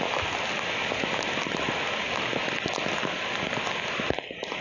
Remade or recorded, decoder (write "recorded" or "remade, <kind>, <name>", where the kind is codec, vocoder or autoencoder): recorded